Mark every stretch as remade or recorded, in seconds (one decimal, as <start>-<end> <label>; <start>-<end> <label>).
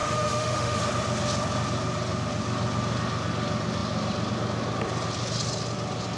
0.0-0.8 remade; 0.8-6.2 recorded